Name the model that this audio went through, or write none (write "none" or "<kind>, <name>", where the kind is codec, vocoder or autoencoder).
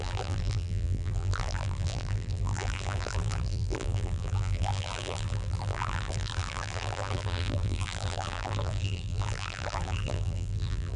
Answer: vocoder, BigVGAN v2